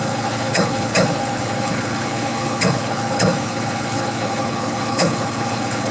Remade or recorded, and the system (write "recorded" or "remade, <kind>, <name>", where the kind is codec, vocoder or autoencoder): remade, codec, HILCodec